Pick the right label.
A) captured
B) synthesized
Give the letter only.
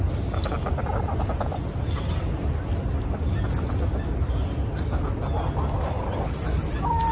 A